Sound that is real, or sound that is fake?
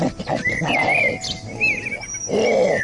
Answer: real